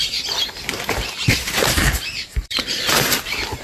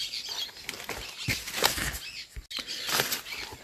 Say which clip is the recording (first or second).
second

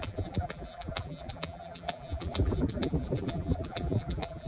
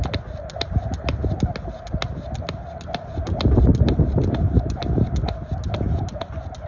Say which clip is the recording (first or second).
second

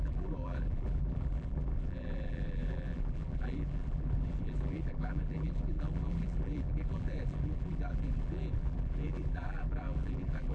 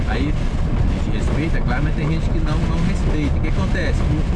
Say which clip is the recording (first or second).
second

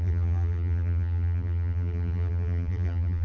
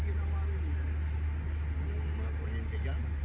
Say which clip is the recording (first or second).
second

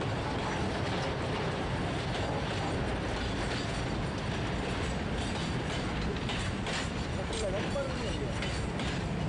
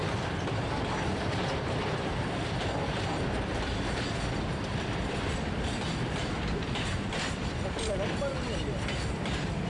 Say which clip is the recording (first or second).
first